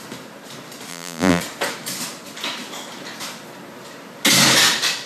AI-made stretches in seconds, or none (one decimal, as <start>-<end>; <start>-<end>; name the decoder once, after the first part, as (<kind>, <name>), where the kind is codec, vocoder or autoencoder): 0.9-1.4 (vocoder, BigVGAN v2)